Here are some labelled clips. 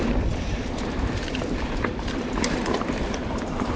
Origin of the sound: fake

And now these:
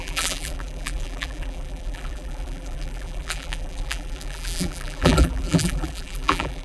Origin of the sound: fake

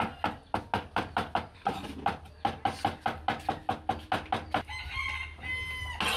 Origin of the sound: real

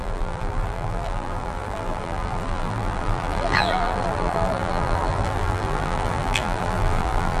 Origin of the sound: fake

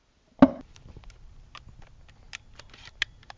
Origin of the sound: real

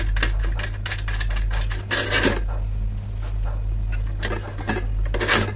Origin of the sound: real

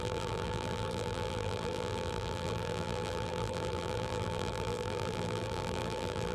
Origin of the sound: fake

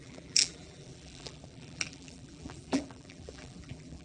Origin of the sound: fake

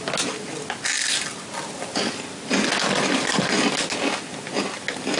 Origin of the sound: real